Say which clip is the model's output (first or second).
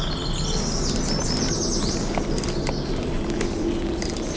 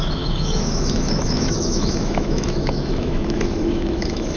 second